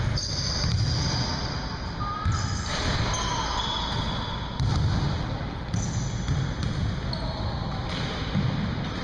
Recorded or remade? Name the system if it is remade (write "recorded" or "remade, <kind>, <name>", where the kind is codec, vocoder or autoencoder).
recorded